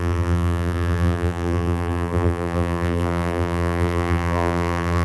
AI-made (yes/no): yes